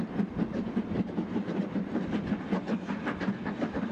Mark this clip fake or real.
real